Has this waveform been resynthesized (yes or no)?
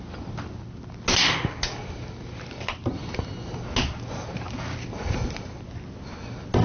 no